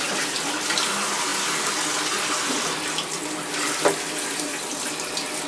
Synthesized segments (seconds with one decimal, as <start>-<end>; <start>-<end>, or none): none